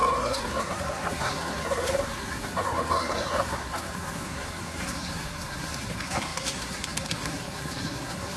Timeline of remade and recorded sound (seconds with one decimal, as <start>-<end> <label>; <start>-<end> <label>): 0.0-8.4 remade